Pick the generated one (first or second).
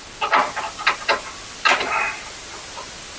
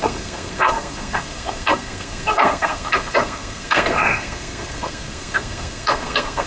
second